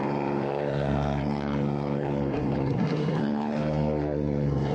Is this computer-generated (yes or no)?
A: yes